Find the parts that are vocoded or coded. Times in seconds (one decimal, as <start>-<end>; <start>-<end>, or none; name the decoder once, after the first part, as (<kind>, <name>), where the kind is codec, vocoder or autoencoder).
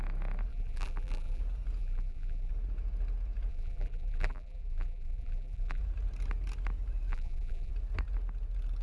0.5-1.4 (vocoder, BigVGAN v2); 1.8-2.5; 3.5-5.8; 7.1-7.7